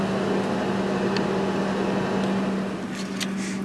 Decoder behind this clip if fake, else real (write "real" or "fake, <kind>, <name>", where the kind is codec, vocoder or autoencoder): real